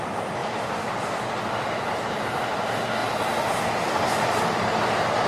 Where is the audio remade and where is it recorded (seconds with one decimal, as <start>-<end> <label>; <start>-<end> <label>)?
0.0-5.3 recorded